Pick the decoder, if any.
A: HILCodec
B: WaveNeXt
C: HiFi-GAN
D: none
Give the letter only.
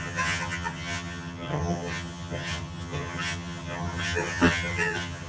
C